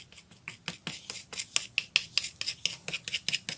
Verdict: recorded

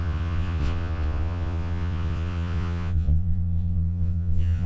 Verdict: remade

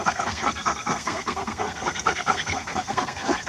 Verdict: remade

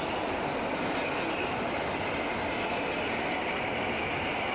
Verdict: recorded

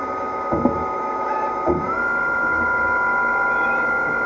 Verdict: recorded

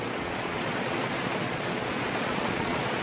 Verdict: remade